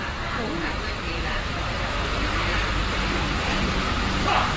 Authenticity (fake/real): real